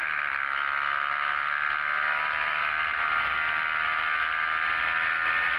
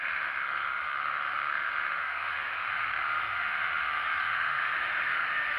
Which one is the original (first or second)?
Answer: first